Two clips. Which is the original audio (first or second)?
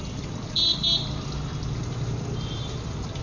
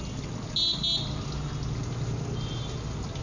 second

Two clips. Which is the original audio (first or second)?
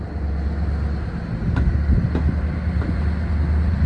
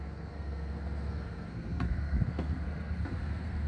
first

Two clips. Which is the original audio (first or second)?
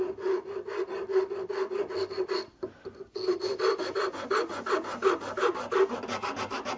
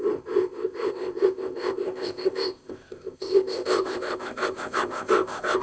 first